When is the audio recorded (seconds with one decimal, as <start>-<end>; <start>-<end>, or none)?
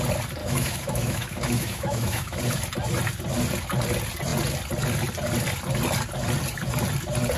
0.0-0.4; 2.4-7.4